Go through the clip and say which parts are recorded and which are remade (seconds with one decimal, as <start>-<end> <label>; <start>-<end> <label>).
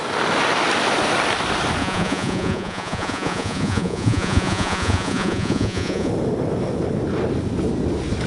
0.0-1.8 recorded; 1.8-6.1 remade; 6.1-8.3 recorded